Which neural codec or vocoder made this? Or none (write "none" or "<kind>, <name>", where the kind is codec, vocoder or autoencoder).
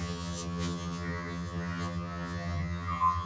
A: vocoder, HiFi-GAN